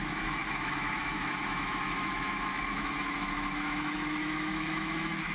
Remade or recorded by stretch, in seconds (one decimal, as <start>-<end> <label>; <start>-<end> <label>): 0.0-5.3 remade